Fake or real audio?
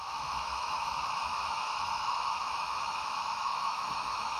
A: fake